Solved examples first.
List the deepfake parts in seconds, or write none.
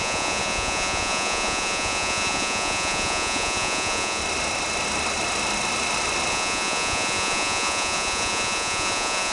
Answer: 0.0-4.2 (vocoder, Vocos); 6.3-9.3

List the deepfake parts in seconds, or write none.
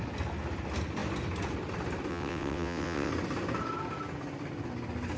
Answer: 2.1-3.1 (vocoder, WaveNeXt)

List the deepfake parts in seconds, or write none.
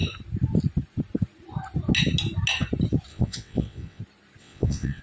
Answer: 3.1-4.0 (vocoder, WaveNeXt); 4.4-5.0